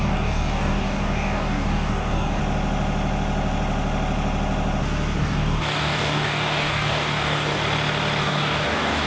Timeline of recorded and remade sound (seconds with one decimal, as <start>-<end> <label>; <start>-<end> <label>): 0.0-2.4 remade; 2.4-5.2 recorded; 5.2-7.6 remade; 7.6-8.2 recorded; 8.2-9.1 remade